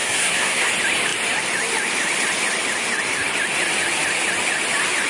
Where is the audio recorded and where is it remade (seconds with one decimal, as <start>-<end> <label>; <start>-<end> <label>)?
0.0-0.7 remade; 0.7-5.1 recorded